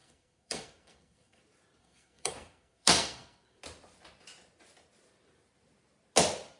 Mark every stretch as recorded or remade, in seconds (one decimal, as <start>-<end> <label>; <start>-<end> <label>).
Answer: 0.0-1.4 remade; 1.4-1.8 recorded; 1.8-3.6 remade; 3.6-6.6 recorded